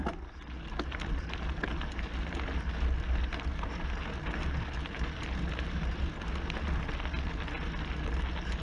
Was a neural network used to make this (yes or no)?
no